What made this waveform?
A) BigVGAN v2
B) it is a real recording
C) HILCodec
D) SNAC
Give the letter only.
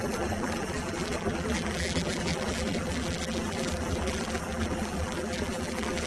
A